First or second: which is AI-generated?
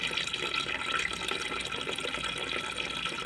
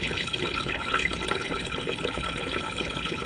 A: second